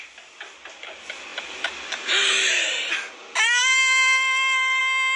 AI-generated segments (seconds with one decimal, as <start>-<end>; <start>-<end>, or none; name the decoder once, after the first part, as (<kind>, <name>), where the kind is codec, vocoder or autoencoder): 3.6-4.8 (autoencoder, DAC-VAE)